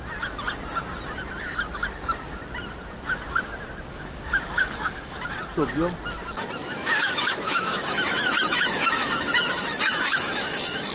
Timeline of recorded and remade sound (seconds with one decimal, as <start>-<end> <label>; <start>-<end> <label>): 0.0-3.9 recorded; 3.9-5.3 remade; 5.3-6.6 recorded; 6.6-10.9 remade